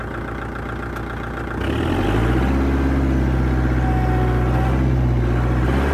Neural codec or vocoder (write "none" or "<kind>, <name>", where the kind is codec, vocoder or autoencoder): none